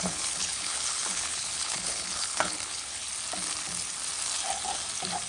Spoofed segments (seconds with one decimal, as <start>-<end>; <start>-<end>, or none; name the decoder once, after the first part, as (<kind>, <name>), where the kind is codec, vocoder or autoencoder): 0.0-3.0 (codec, HILCodec)